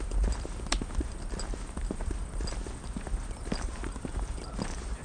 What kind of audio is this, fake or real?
real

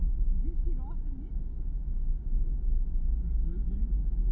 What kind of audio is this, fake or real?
real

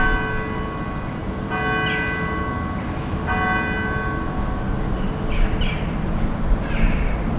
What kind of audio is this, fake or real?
real